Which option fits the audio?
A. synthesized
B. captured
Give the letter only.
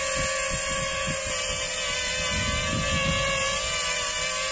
B